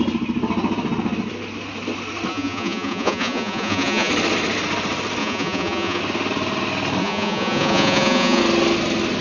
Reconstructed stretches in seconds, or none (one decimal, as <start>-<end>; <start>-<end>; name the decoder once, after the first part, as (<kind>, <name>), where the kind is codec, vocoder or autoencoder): 2.3-4.1 (vocoder, Vocos); 5.2-6.0; 7.0-8.4